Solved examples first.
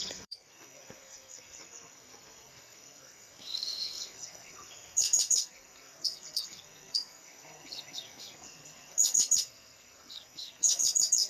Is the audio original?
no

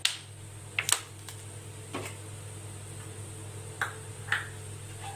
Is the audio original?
yes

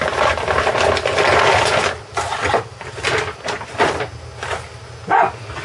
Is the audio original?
yes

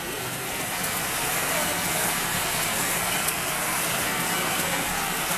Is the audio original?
no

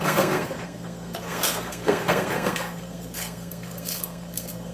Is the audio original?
no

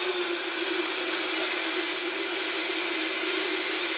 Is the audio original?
yes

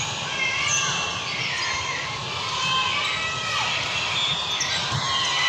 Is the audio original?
yes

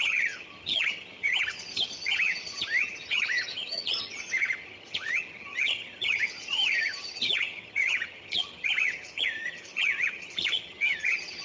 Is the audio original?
no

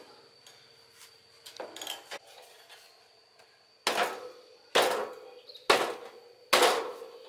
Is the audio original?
yes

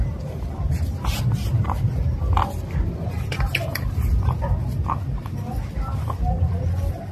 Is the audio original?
yes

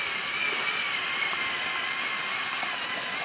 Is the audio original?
yes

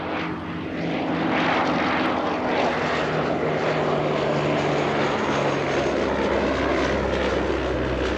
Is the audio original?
yes